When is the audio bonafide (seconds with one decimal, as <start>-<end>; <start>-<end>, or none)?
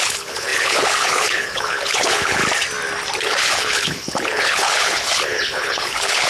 2.4-3.2